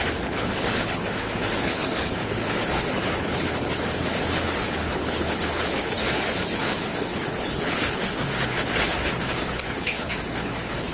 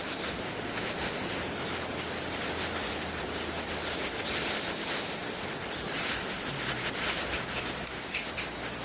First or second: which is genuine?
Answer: second